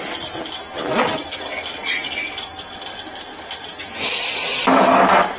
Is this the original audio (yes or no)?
yes